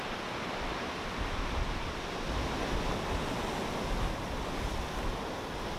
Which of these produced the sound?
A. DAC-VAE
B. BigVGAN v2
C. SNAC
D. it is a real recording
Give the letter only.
D